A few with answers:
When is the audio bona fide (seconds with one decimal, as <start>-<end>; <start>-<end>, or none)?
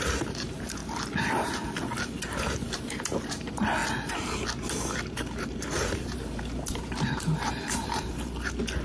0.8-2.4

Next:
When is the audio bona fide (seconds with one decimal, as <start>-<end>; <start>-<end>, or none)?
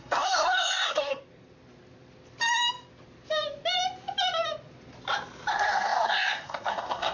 1.2-5.5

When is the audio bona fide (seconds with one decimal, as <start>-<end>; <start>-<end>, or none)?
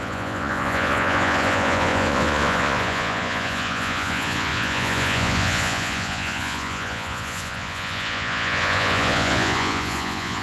none